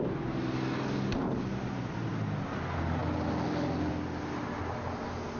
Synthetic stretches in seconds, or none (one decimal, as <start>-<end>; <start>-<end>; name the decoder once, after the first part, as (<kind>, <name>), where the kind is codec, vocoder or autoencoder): none